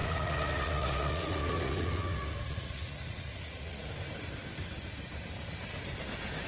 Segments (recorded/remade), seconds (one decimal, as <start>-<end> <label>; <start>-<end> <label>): 0.0-3.9 remade; 3.9-6.5 recorded